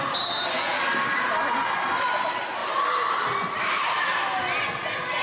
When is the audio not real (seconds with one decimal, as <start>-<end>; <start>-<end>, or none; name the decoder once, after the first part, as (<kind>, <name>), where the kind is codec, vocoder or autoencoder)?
2.6-3.8 (vocoder, BigVGAN v2)